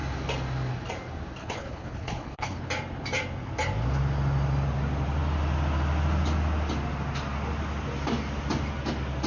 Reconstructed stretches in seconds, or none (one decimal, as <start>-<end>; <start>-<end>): 1.4-2.7